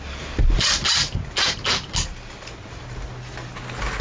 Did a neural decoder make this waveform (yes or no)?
no